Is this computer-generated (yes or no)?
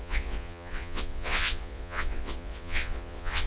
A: yes